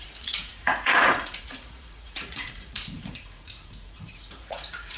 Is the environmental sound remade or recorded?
remade